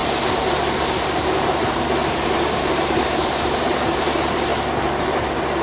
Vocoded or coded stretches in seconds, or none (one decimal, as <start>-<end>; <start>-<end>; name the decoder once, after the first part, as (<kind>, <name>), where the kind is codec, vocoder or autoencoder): 0.0-4.5 (vocoder, BigVGAN v2); 5.0-5.6